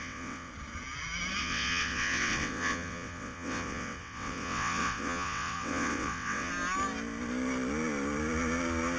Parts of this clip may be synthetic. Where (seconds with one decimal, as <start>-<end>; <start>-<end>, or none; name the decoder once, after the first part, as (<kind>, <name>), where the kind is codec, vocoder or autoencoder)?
0.0-0.5 (vocoder, WaveNeXt); 1.4-6.5